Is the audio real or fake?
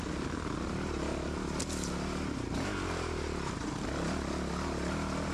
real